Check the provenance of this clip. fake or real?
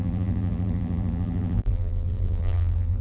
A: fake